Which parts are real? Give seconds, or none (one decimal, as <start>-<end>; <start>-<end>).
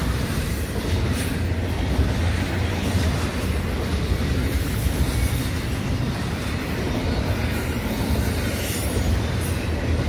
0.7-3.3; 6.9-10.1